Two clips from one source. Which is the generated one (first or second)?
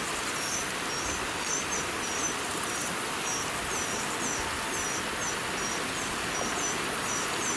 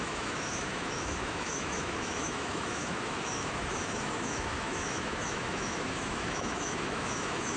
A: second